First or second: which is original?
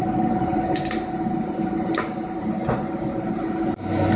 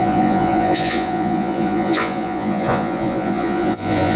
first